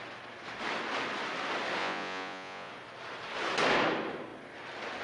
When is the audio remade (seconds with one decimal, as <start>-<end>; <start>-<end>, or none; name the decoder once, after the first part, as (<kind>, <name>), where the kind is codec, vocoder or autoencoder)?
1.8-2.7 (vocoder, Vocos)